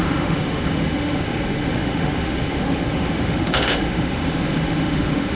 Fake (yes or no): yes